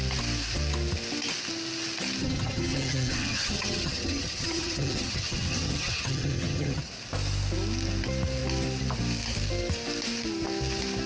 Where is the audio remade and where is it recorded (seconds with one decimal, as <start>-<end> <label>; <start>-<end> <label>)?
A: 0.0-2.2 recorded; 2.2-6.9 remade; 6.9-11.1 recorded